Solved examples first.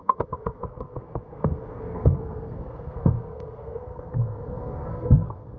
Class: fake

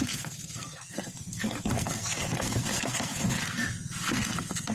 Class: fake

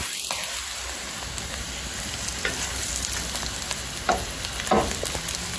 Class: real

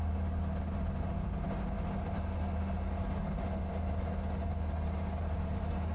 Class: real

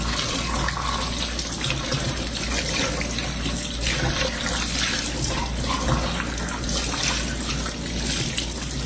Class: real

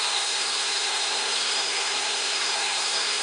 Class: fake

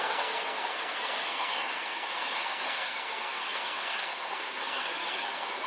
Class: fake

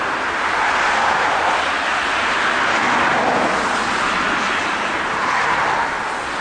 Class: real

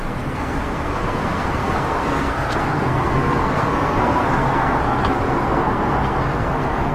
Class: fake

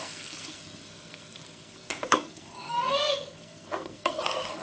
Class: fake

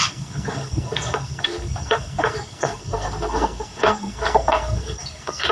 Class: fake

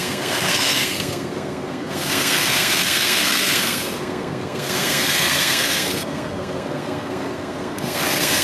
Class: fake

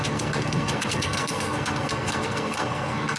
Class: fake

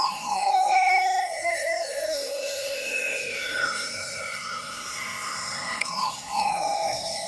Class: fake